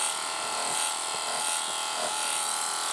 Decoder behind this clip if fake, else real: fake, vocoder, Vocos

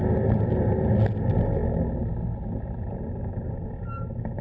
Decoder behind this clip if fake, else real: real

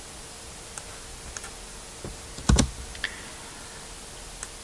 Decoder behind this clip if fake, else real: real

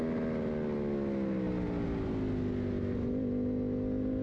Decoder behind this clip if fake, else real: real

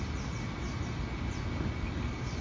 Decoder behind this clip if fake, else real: real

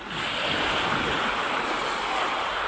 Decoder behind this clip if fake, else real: real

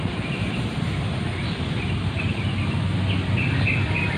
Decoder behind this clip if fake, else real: real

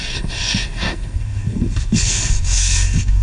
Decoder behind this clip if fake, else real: fake, codec, SNAC